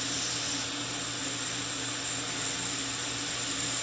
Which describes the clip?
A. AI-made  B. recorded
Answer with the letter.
B